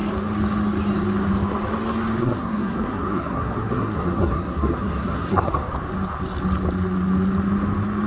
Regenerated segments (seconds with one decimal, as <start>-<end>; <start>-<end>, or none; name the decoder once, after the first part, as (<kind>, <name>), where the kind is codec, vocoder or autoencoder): 2.2-5.7 (codec, SNAC)

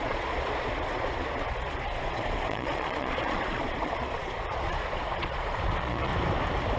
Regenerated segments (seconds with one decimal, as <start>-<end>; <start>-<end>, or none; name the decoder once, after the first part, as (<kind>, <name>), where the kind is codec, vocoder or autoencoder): 0.0-6.1 (vocoder, Vocos)

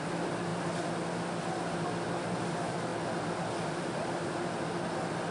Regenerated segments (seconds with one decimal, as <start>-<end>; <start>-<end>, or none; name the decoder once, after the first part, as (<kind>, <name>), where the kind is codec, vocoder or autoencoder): none